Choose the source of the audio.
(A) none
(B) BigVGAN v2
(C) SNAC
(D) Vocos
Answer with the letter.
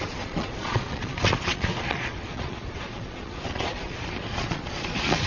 D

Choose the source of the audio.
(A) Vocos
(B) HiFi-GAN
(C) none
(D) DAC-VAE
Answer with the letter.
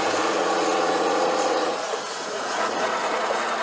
A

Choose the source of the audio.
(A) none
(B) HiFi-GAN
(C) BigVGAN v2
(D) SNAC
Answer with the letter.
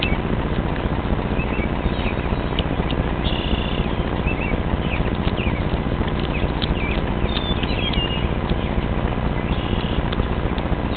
A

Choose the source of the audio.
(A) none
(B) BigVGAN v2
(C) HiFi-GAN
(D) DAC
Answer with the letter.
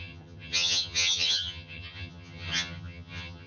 C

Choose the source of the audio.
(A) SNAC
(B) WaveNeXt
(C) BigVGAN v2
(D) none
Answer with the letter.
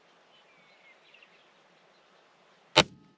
D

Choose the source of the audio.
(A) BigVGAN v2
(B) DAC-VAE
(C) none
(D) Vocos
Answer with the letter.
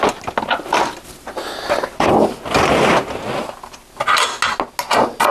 C